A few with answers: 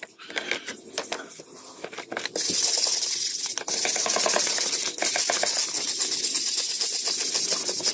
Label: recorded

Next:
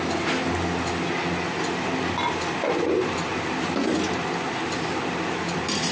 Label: recorded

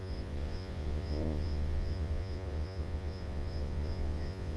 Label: remade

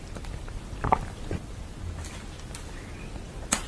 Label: recorded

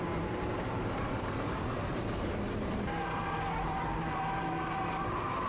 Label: remade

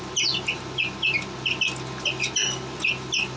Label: recorded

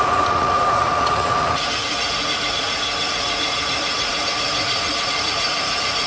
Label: remade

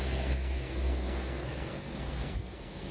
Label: remade